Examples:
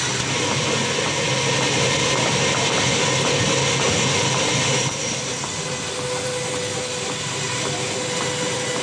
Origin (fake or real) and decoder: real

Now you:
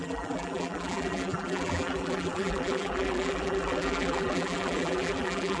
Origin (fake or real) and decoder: fake, vocoder, BigVGAN v2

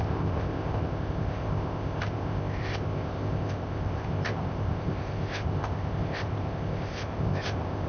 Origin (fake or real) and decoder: fake, codec, ZipCodec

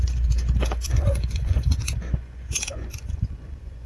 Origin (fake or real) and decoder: fake, vocoder, Vocos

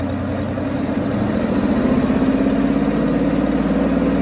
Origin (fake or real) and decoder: real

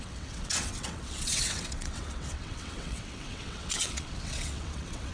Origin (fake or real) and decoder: fake, vocoder, WaveNeXt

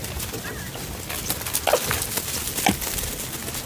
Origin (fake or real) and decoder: real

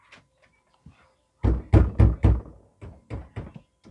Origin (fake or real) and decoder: real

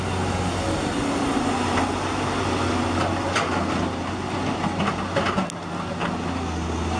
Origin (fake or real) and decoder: real